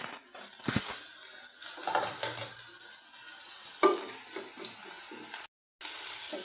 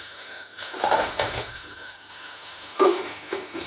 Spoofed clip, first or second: second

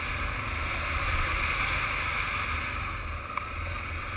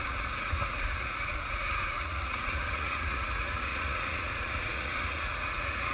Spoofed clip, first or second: second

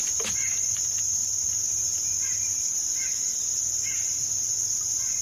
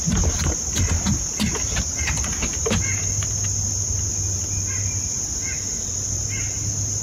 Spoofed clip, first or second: first